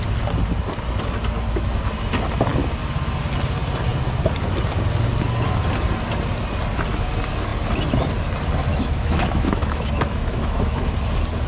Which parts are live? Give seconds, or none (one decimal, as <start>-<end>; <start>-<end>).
0.0-8.7; 10.8-11.5